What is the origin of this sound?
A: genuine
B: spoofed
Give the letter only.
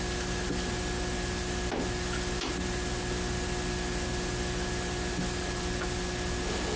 A